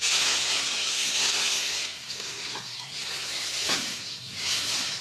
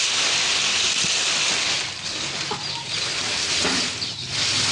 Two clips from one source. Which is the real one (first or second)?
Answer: second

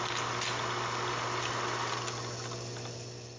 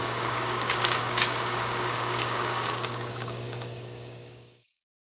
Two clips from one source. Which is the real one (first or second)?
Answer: first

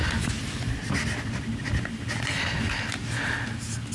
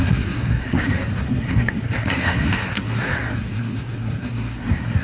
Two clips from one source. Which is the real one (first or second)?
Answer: first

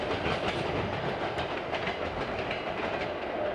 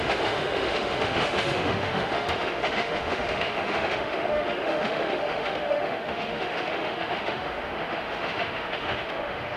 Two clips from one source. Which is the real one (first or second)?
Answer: first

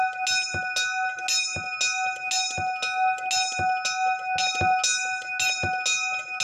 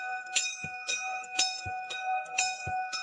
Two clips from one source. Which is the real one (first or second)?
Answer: first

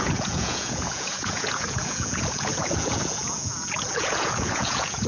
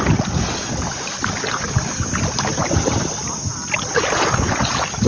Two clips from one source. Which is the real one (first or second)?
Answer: second